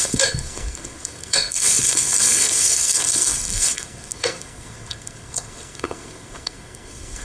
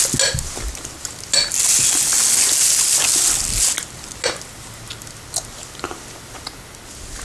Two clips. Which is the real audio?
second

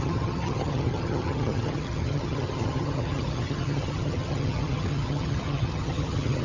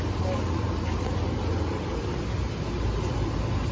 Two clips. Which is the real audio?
second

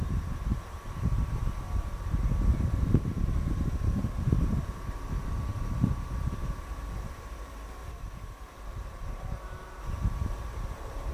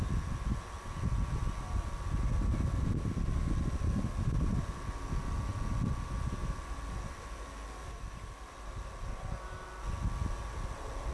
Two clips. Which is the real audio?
second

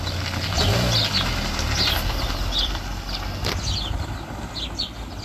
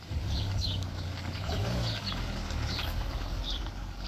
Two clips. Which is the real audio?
first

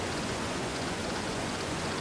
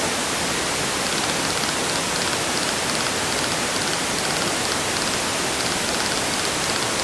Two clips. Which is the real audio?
second